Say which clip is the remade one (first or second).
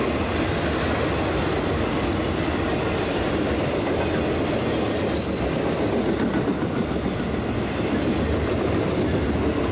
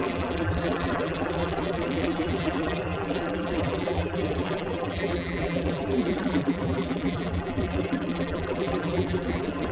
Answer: second